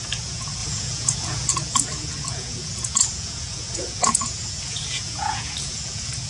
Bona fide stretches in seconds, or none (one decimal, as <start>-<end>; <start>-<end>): none